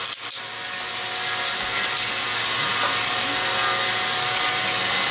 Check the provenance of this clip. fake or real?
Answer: real